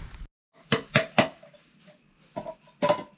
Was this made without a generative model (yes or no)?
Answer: yes